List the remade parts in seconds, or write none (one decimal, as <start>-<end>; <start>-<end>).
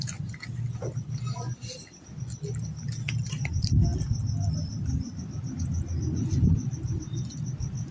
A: none